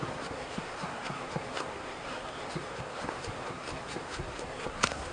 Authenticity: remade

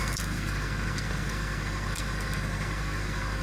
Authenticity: remade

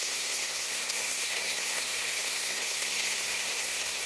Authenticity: remade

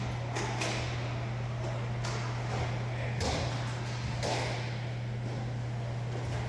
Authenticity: recorded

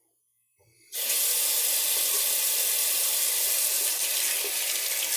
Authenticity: recorded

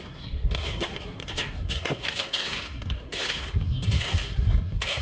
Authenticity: remade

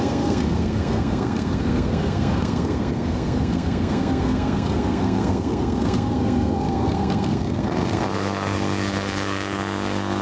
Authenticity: remade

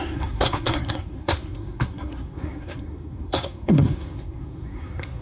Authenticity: remade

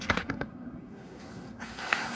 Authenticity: remade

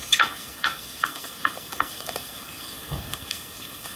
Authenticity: remade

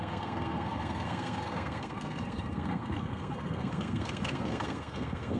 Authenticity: remade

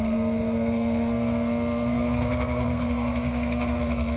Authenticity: remade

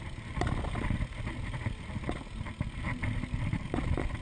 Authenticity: recorded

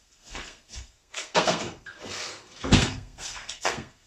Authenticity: remade